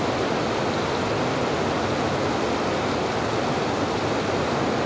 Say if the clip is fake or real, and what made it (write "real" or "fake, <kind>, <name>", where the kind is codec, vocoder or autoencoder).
real